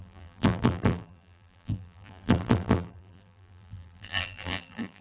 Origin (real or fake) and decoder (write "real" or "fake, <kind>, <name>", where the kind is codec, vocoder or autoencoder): fake, vocoder, BigVGAN v2